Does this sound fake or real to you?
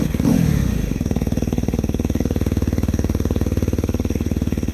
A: fake